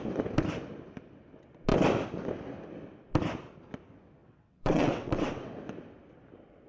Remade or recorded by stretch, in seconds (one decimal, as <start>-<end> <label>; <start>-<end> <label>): 0.0-4.2 recorded; 4.2-5.5 remade; 5.5-6.7 recorded